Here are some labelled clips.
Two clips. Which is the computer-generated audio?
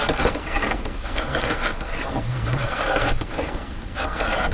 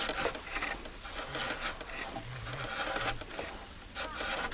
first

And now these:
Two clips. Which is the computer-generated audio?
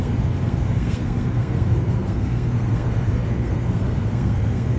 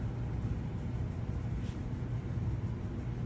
first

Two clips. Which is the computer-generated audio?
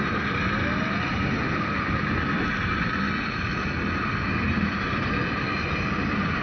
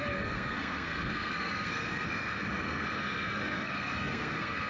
second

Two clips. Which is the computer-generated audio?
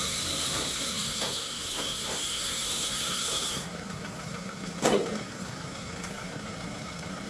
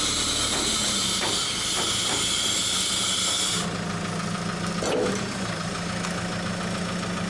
first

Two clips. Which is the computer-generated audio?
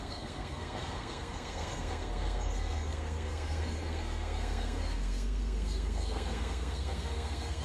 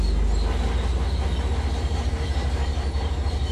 first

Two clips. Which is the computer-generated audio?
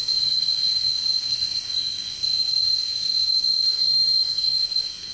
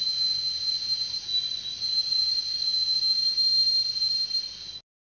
first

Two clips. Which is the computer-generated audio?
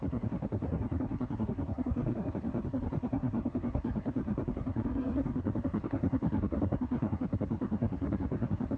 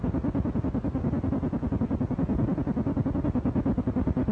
first